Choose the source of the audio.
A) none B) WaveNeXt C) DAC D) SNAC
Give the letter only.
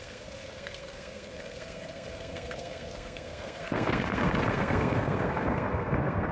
D